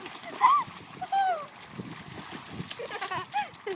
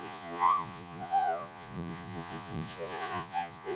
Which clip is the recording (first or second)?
first